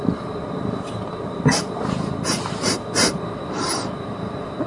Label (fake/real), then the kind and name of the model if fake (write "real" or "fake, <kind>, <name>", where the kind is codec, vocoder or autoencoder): fake, vocoder, BigVGAN v2